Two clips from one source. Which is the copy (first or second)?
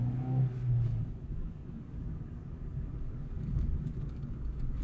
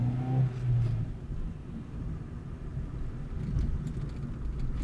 first